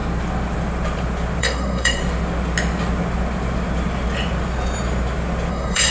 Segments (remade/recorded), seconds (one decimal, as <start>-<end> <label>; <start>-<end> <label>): 0.0-1.4 recorded; 1.4-2.0 remade; 2.0-5.5 recorded; 5.5-5.9 remade